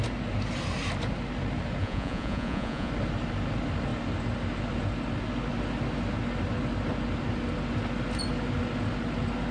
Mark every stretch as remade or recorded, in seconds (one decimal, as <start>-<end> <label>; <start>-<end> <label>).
0.0-1.8 recorded; 1.8-2.9 remade; 2.9-9.5 recorded